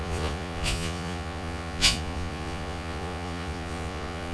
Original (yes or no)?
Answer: no